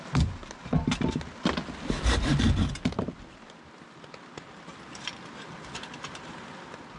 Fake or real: real